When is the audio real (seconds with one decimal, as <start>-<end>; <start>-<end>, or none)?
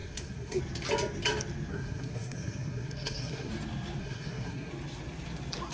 0.6-1.7; 3.5-4.0; 4.7-5.7